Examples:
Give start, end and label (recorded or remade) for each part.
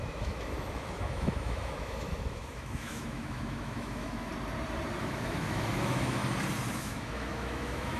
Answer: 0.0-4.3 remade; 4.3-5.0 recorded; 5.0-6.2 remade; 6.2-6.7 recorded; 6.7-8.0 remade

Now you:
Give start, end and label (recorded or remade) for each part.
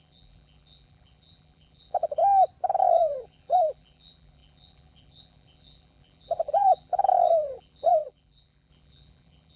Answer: 0.0-2.2 remade; 2.2-2.8 recorded; 2.8-9.6 remade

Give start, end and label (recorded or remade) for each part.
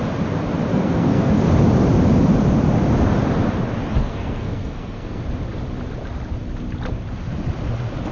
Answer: 0.0-0.7 recorded; 0.7-1.3 remade; 1.3-4.0 recorded; 4.0-5.2 remade; 5.2-8.1 recorded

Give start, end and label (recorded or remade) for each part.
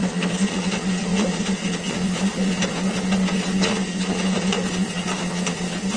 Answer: 0.0-6.0 remade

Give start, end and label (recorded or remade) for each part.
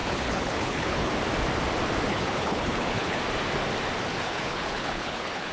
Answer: 0.0-1.1 remade; 1.1-2.1 recorded; 2.1-3.2 remade; 3.2-4.1 recorded; 4.1-5.5 remade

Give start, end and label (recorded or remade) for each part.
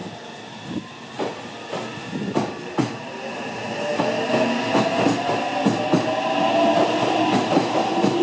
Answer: 0.0-8.2 recorded